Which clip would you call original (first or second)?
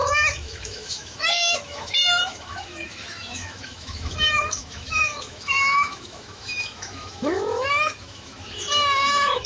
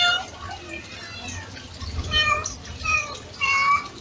second